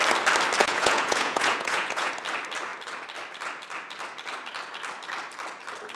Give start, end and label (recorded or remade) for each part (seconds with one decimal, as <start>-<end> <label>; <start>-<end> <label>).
0.0-0.6 recorded; 0.6-2.1 remade; 2.1-6.0 recorded